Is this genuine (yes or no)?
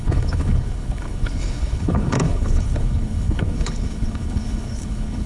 no